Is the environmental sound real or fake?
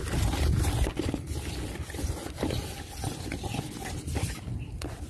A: real